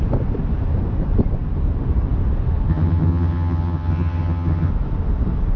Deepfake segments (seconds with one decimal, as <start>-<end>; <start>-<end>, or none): 2.7-4.7